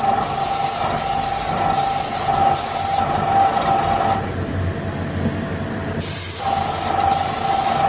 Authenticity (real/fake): real